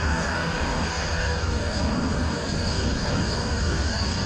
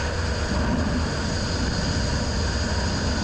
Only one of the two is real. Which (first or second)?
second